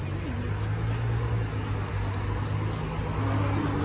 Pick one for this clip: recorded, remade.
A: recorded